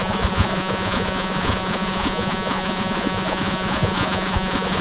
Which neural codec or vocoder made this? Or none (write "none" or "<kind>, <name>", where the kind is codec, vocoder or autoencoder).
vocoder, Vocos